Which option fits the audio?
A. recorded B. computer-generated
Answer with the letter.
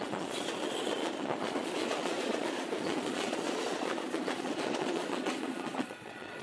B